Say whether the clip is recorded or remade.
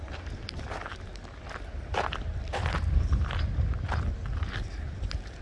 recorded